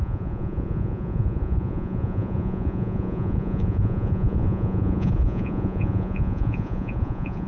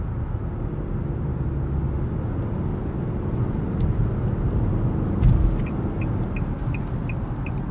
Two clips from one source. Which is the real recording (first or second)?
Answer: second